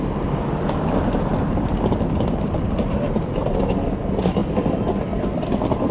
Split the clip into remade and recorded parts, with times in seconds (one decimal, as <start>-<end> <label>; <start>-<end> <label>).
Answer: 0.0-1.3 recorded; 1.3-3.4 remade; 3.4-5.9 recorded